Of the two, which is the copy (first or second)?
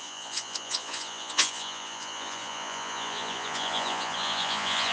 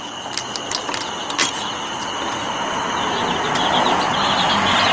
first